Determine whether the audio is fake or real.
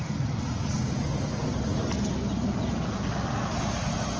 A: real